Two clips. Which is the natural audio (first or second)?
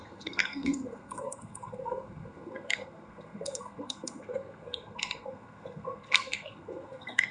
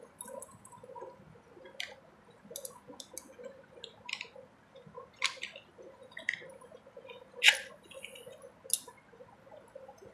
second